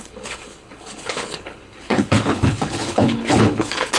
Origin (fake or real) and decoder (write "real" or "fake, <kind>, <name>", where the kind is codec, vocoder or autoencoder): fake, codec, HILCodec